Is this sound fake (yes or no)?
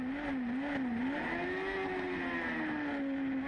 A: no